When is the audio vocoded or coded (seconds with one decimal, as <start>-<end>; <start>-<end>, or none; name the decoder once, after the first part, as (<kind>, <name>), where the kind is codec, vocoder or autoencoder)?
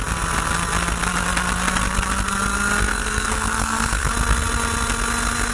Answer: 2.9-4.1 (codec, SNAC)